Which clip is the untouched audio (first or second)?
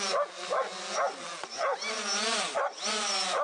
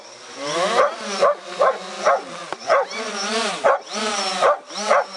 first